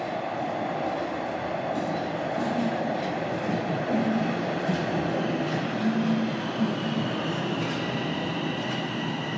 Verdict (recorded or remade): recorded